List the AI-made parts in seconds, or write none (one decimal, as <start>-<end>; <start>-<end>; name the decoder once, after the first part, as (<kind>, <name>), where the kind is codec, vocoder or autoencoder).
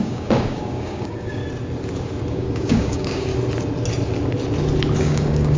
0.0-1.4 (codec, DAC); 2.3-3.3; 5.0-5.6